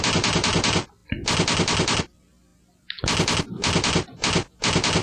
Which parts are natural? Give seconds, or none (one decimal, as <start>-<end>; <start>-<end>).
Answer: 0.0-5.0